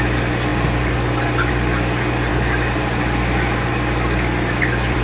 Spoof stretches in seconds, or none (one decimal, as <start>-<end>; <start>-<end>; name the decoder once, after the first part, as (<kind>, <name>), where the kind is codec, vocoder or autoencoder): 0.5-1.5 (vocoder, BigVGAN v2); 2.3-5.0